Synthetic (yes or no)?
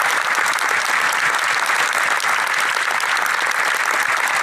no